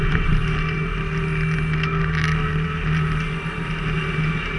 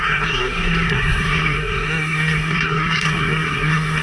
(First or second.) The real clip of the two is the first